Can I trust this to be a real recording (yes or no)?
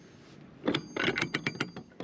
yes